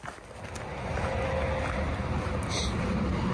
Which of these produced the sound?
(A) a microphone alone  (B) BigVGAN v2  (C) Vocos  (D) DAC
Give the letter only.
A